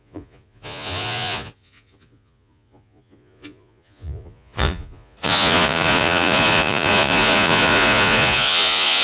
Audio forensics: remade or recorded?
remade